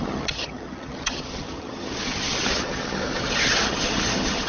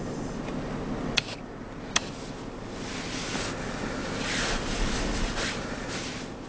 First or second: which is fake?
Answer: first